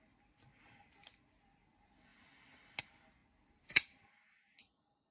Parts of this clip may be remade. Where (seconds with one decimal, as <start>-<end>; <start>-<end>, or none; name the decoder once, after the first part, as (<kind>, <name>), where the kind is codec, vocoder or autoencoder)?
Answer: none

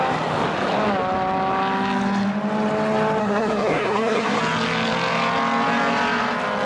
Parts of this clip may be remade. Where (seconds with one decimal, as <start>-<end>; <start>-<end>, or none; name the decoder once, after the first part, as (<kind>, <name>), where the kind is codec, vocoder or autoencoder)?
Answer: 3.2-4.4 (codec, SNAC)